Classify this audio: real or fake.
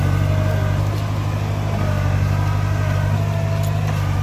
real